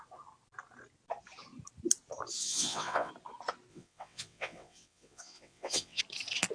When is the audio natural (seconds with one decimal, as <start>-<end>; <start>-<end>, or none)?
0.0-2.4; 3.1-3.7; 6.0-6.5